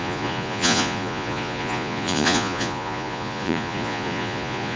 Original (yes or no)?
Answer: no